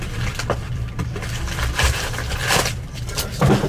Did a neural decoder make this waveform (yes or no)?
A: yes